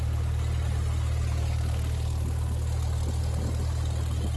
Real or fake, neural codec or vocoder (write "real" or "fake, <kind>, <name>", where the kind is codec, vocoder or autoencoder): real